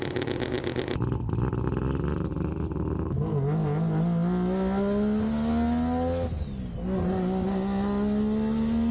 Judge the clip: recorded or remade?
recorded